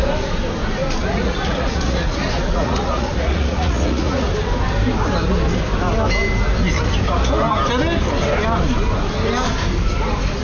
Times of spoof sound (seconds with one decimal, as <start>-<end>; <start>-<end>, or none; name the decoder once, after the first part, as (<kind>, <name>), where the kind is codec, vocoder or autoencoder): 1.0-4.3 (vocoder, Vocos)